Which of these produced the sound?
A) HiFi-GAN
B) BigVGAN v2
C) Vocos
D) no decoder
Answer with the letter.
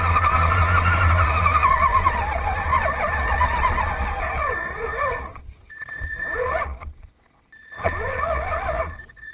C